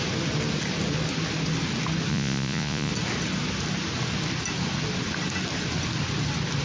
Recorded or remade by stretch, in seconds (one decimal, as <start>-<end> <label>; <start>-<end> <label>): 0.0-2.1 recorded; 2.1-2.9 remade; 2.9-6.6 recorded